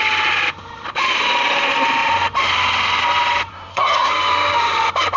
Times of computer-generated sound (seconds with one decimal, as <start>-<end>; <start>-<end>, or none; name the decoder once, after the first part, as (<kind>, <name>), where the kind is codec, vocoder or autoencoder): 3.5-4.1 (codec, SNAC)